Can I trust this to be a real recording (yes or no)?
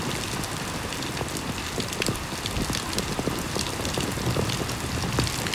yes